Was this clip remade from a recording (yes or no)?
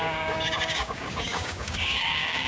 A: yes